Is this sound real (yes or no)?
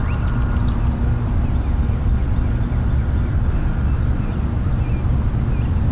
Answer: yes